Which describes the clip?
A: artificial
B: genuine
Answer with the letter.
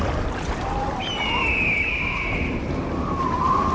B